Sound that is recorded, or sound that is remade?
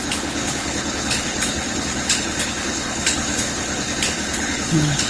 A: remade